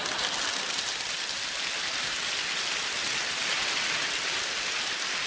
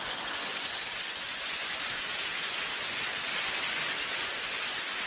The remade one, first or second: second